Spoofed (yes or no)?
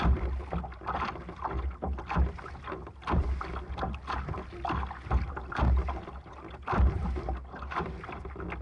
no